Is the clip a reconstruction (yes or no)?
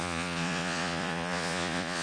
yes